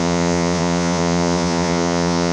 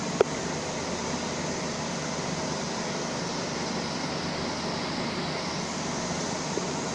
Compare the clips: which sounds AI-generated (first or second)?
first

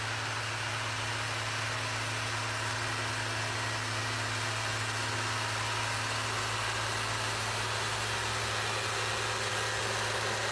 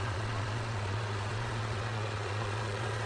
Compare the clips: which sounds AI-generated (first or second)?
second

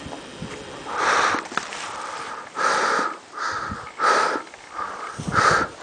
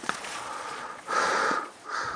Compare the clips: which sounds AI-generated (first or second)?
second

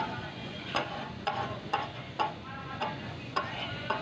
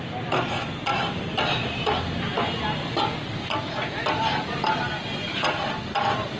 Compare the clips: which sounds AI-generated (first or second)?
first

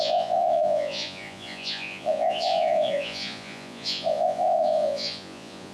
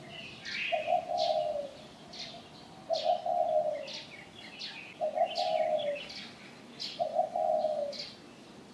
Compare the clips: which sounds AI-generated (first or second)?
first